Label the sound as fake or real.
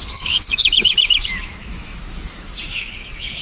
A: fake